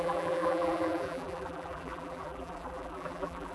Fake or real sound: fake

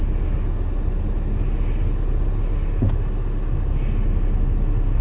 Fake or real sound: real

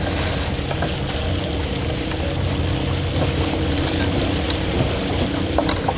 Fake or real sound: real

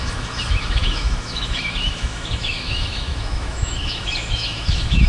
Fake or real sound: fake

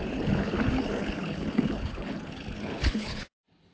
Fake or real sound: fake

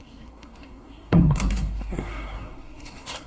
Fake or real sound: fake